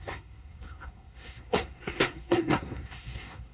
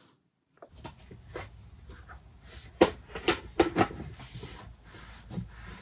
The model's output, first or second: first